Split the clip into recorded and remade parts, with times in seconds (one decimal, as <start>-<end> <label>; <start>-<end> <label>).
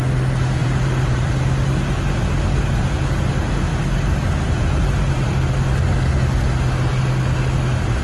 0.0-0.6 recorded; 0.6-1.3 remade; 1.3-3.7 recorded; 3.7-5.4 remade; 5.4-8.0 recorded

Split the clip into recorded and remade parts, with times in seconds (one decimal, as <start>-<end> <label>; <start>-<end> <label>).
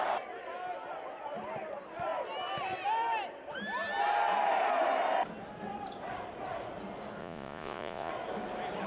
0.0-7.2 recorded; 7.2-8.1 remade; 8.1-8.9 recorded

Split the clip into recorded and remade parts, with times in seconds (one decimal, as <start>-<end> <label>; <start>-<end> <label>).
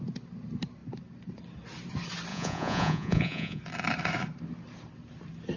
0.0-2.3 recorded; 2.3-3.6 remade; 3.6-5.6 recorded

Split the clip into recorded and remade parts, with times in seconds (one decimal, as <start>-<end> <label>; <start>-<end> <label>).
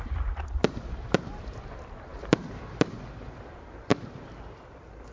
0.0-3.9 remade; 3.9-4.6 recorded; 4.6-5.1 remade